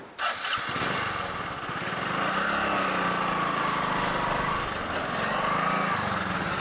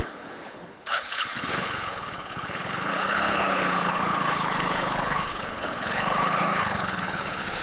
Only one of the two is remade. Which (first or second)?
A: second